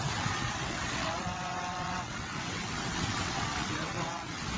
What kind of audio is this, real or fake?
fake